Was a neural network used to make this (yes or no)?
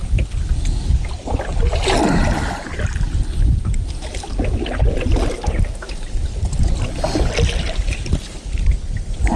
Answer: no